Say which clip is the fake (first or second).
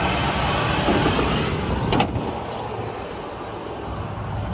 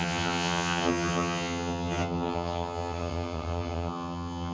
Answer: second